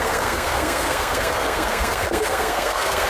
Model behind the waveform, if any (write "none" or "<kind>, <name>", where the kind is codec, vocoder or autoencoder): codec, SNAC